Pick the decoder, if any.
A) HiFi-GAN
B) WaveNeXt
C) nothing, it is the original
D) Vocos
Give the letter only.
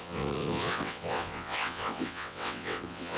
B